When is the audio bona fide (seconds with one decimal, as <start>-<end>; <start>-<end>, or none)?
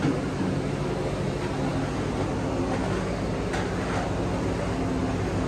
0.0-5.5